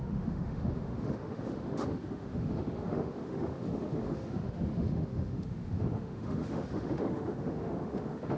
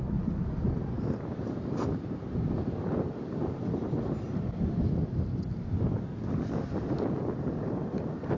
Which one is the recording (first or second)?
second